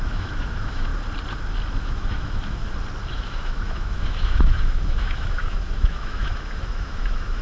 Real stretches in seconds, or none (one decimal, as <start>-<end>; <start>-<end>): 0.9-1.8; 2.6-3.1

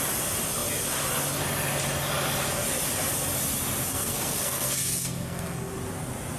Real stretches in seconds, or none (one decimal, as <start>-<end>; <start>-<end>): 0.0-3.9; 5.7-6.4

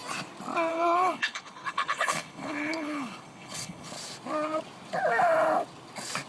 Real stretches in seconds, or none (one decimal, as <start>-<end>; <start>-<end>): 0.0-0.7; 3.9-6.3

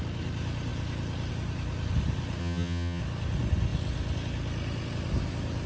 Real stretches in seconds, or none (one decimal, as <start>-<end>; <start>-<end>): 0.0-2.4; 3.0-5.7

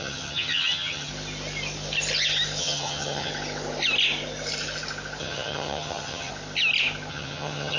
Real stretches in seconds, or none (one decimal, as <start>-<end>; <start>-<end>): 1.1-2.6; 3.3-5.2; 6.3-7.1